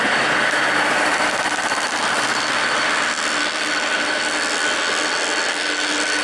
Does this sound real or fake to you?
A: real